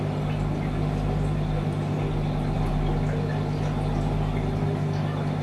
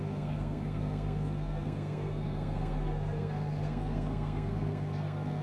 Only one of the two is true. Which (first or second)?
first